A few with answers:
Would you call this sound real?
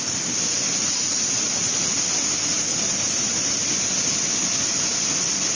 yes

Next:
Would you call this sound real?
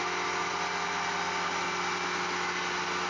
yes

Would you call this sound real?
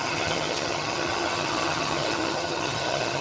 no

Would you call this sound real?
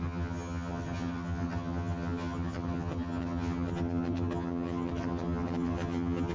no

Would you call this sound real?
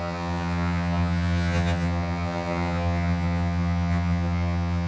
no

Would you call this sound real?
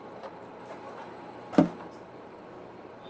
yes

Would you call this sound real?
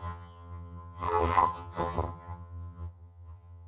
no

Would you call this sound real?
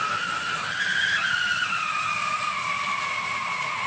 yes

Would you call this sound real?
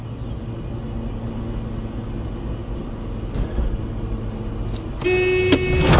yes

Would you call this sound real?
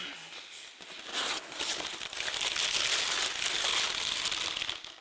yes